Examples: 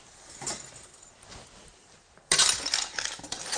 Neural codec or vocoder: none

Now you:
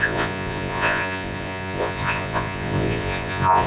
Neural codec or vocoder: vocoder, Vocos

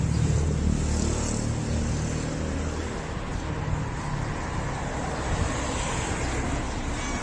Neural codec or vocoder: none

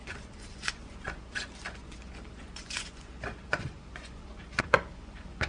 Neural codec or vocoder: vocoder, Vocos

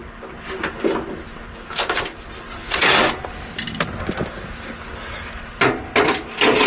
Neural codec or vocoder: none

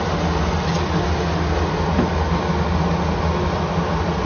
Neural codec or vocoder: none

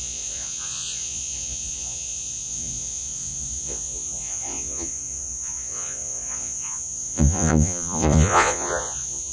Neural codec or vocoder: vocoder, Vocos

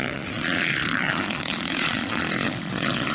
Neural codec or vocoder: vocoder, Vocos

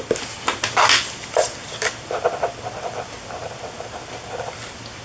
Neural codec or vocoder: none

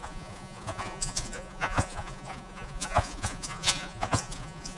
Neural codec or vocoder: vocoder, Vocos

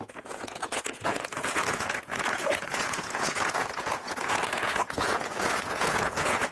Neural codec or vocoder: vocoder, Vocos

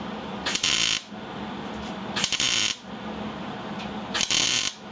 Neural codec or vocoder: none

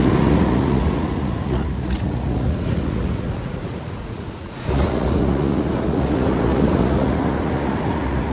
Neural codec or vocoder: vocoder, Vocos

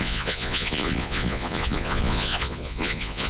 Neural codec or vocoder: vocoder, Vocos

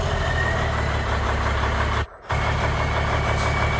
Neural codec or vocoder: none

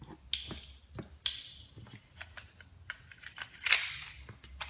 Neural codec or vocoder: none